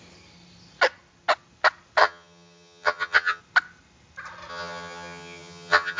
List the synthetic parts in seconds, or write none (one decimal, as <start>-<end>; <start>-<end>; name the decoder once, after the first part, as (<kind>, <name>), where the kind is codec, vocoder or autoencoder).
2.0-3.4 (vocoder, HiFi-GAN); 4.5-6.0